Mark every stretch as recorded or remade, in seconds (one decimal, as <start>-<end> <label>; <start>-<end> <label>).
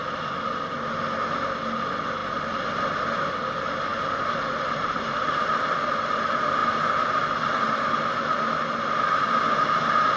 0.0-2.2 recorded; 2.2-3.3 remade; 3.3-3.9 recorded; 3.9-6.1 remade; 6.1-6.6 recorded; 6.6-10.2 remade